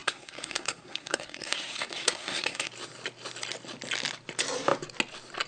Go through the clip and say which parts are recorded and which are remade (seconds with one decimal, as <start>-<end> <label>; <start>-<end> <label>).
0.0-2.7 remade; 2.7-5.5 recorded